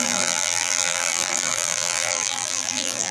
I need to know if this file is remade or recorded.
remade